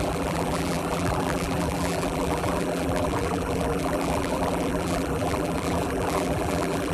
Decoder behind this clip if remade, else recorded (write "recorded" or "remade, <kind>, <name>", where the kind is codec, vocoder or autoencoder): remade, vocoder, BigVGAN v2